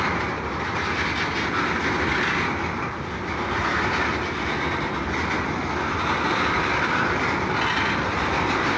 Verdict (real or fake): real